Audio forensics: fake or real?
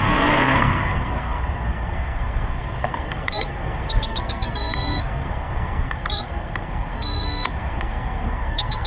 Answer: fake